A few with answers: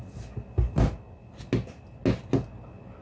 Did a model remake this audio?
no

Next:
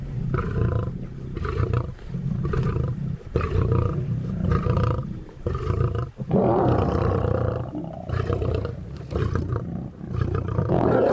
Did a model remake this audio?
yes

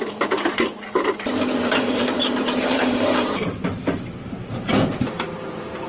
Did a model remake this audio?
yes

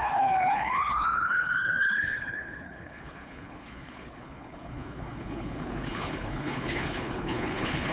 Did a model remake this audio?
yes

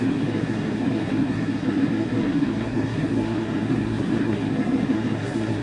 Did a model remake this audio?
yes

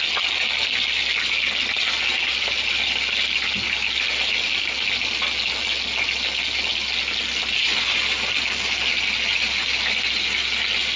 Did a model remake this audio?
no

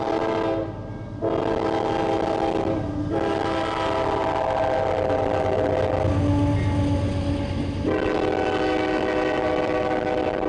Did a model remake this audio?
no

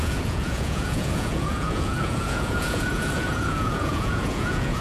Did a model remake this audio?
yes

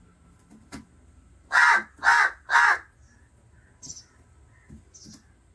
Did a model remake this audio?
no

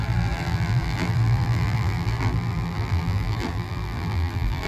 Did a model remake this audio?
yes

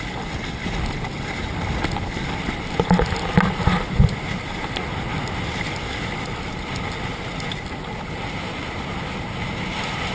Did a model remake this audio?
no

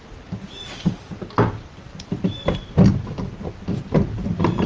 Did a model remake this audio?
no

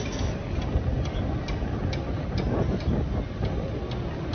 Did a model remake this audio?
no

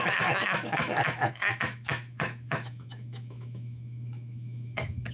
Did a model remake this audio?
yes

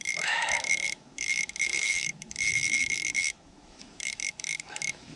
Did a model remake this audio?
yes